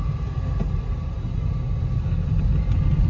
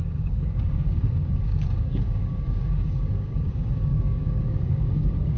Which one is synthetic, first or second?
second